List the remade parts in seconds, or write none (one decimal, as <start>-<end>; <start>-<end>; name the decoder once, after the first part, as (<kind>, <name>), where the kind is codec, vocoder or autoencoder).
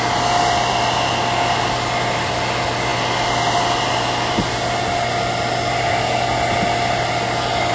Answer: none